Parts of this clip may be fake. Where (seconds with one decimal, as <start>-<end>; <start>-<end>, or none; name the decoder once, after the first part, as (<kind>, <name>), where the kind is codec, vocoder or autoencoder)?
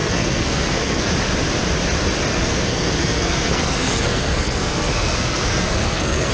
0.0-1.1 (codec, SNAC); 2.3-6.3